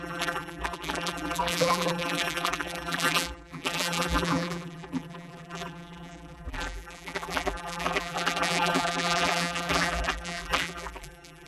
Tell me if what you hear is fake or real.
fake